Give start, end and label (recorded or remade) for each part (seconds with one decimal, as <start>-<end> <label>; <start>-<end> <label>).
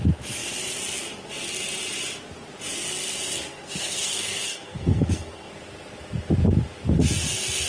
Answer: 0.0-3.5 recorded; 3.5-5.5 remade; 5.5-7.7 recorded